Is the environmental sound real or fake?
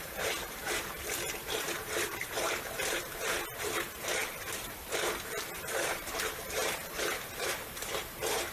fake